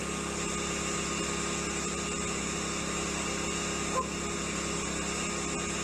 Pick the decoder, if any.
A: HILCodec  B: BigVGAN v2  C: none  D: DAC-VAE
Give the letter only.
C